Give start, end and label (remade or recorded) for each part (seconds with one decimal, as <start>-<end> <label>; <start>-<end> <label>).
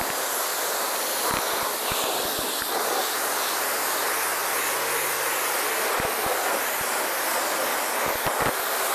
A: 0.0-8.9 recorded